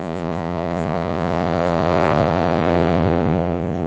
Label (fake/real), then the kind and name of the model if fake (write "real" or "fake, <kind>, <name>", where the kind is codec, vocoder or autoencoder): fake, vocoder, Vocos